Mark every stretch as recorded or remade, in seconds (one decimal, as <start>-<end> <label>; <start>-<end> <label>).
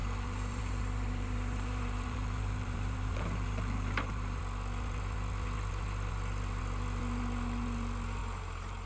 0.0-4.4 remade; 4.4-8.2 recorded; 8.2-8.9 remade